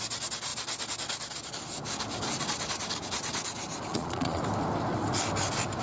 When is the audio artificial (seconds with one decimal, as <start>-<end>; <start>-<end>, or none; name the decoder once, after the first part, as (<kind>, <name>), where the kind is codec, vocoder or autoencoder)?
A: 3.9-4.4 (vocoder, Vocos)